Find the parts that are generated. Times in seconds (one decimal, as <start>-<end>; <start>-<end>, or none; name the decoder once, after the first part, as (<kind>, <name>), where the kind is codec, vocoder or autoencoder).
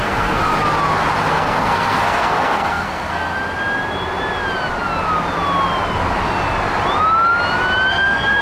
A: 0.0-0.5 (codec, SNAC); 1.3-3.3; 7.9-8.4